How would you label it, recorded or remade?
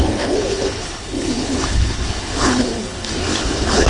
remade